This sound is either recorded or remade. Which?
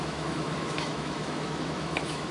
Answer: remade